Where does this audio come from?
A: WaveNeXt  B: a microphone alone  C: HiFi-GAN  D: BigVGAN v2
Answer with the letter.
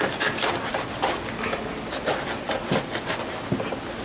B